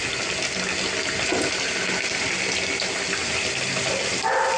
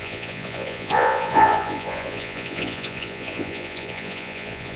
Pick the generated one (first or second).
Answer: second